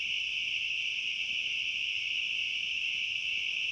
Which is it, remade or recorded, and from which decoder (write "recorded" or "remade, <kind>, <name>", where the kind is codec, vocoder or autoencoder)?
recorded